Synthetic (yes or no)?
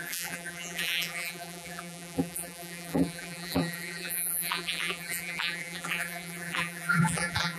yes